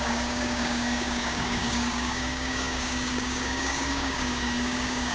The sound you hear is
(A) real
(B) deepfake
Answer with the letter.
B